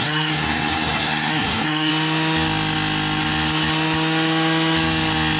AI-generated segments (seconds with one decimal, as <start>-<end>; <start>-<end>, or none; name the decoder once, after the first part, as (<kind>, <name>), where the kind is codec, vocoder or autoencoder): 0.0-1.9 (codec, SNAC)